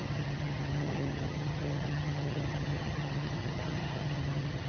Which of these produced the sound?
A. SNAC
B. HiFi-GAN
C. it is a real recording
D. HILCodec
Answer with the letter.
B